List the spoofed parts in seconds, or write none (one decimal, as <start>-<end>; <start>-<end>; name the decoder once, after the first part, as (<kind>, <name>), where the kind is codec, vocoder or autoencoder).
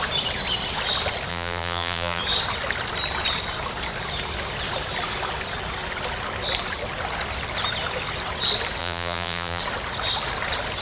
1.3-2.2 (vocoder, BigVGAN v2); 8.8-9.6